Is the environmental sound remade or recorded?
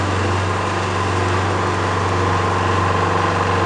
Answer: recorded